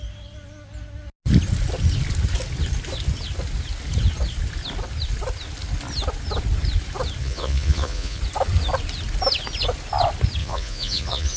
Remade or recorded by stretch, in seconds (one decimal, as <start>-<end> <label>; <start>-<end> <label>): 0.0-7.2 recorded; 7.2-8.2 remade; 8.2-10.4 recorded; 10.4-11.4 remade